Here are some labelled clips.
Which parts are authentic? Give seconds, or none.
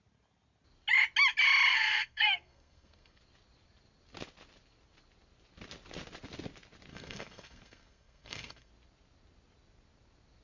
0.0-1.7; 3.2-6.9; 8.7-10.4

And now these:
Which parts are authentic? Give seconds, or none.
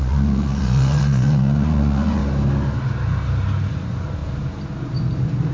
2.2-3.7; 4.2-5.5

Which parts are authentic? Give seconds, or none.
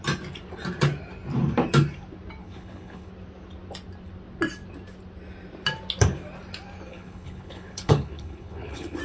0.0-2.4; 3.1-6.9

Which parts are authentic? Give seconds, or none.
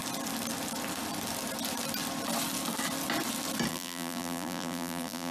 0.0-3.7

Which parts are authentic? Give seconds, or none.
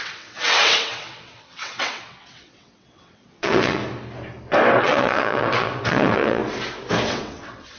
3.8-4.8; 6.4-7.1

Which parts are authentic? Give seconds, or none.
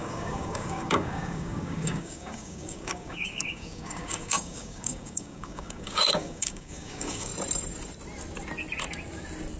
7.3-9.6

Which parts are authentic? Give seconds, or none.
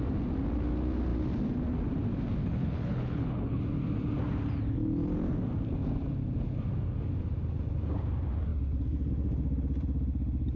0.0-2.4; 3.6-10.6